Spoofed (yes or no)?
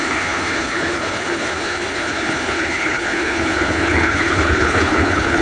yes